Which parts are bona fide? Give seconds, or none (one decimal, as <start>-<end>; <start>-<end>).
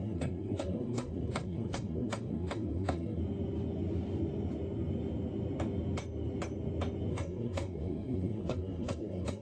3.2-7.1